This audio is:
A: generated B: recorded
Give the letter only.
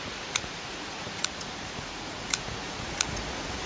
A